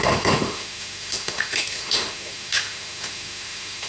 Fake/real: fake